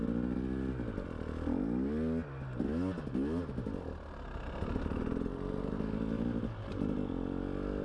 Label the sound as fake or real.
real